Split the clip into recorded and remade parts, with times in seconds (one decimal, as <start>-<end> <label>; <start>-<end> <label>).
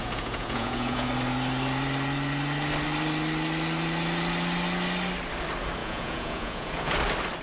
0.0-1.1 remade; 1.1-5.8 recorded; 5.8-6.9 remade; 6.9-7.4 recorded